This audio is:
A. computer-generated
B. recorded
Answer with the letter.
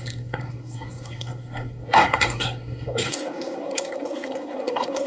A